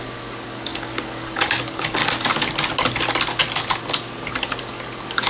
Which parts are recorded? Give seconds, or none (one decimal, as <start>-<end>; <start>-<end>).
2.0-4.6